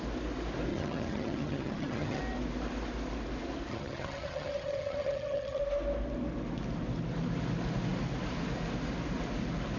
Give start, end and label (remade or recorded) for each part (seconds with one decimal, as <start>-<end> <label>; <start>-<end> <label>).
0.0-0.7 recorded; 0.7-2.2 remade; 2.2-3.7 recorded; 3.7-5.6 remade; 5.6-9.8 recorded

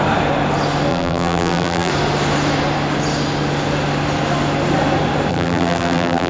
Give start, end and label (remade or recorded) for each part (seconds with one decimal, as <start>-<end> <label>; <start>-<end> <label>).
0.0-0.9 recorded; 0.9-1.9 remade; 1.9-5.3 recorded; 5.3-6.3 remade

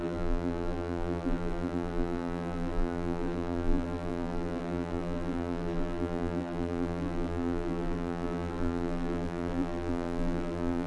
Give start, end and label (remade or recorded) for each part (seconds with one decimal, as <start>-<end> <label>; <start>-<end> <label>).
0.0-10.9 remade

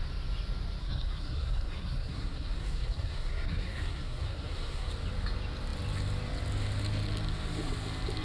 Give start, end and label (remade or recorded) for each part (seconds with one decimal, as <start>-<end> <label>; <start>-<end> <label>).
0.0-0.8 recorded; 0.8-4.9 remade; 4.9-8.2 recorded

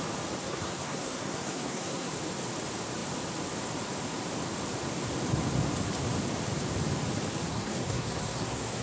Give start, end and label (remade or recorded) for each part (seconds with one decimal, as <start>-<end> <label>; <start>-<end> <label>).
0.0-0.4 recorded; 0.4-2.1 remade; 2.1-7.5 recorded; 7.5-8.8 remade

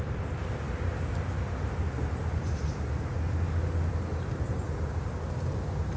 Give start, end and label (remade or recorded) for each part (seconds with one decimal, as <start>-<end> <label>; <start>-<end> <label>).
0.0-6.0 recorded

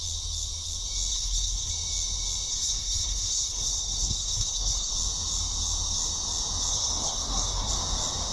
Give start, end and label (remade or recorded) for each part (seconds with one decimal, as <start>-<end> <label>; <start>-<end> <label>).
0.0-1.1 recorded; 1.1-1.7 remade; 1.7-2.5 recorded; 2.5-4.9 remade; 4.9-6.7 recorded; 6.7-7.7 remade; 7.7-8.3 recorded

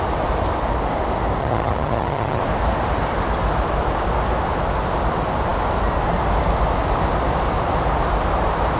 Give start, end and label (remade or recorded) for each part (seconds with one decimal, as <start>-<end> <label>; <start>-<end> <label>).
0.0-1.4 recorded; 1.4-2.4 remade; 2.4-8.8 recorded